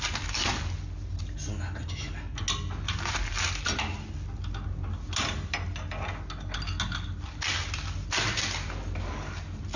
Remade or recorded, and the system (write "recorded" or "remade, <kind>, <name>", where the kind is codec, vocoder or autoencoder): recorded